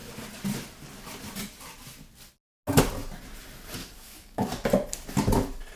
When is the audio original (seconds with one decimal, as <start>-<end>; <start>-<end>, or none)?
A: 0.0-3.8; 4.5-5.8